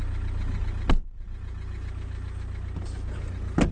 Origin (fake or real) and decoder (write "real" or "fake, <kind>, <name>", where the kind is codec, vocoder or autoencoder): real